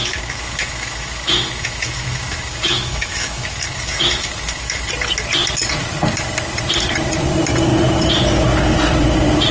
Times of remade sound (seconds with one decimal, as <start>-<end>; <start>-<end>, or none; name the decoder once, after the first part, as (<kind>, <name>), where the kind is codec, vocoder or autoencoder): 0.0-4.9 (autoencoder, DAC-VAE)